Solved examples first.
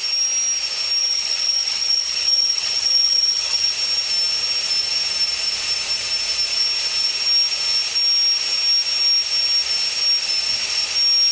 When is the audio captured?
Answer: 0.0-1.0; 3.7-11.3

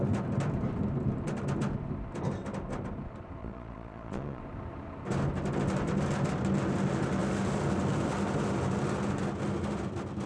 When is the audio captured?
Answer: 0.0-3.4; 4.4-10.3

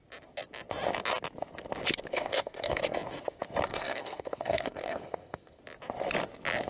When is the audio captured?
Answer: 0.0-2.1; 2.8-3.7; 5.6-6.7

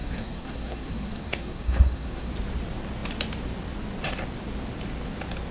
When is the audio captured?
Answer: 2.3-5.5

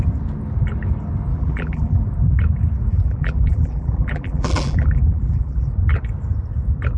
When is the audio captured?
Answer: 0.0-1.3; 2.0-2.9; 5.7-7.0

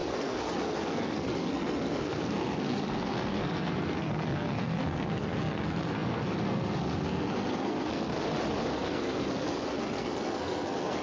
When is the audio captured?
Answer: 8.1-8.7

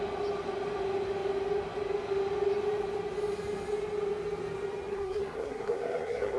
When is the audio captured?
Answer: 0.0-4.9